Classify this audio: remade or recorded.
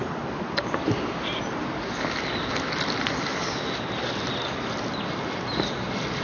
recorded